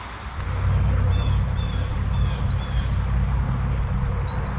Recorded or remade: recorded